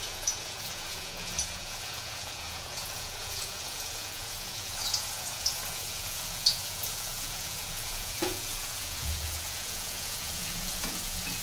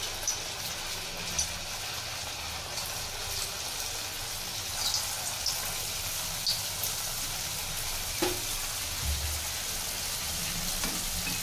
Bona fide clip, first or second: second